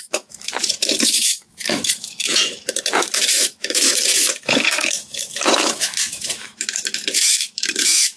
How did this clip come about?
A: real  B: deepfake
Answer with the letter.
B